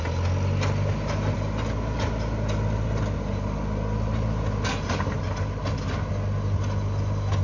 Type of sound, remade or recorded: recorded